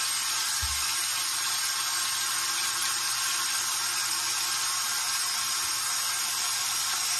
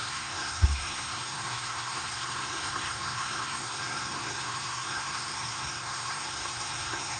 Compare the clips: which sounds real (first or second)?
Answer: first